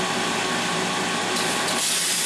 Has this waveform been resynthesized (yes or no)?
no